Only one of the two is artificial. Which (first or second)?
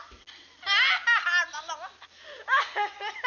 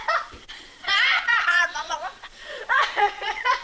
second